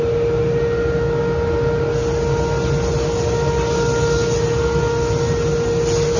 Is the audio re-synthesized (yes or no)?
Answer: no